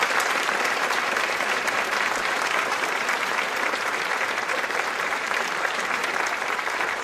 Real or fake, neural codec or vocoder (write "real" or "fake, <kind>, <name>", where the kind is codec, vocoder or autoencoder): fake, vocoder, BigVGAN v2